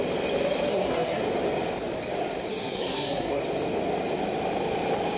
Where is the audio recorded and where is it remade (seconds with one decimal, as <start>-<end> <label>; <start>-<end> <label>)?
0.0-0.7 recorded; 0.7-1.2 remade; 1.2-2.5 recorded; 2.5-3.4 remade; 3.4-5.2 recorded